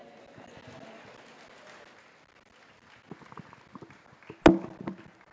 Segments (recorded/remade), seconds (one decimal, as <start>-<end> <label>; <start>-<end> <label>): 0.0-5.3 recorded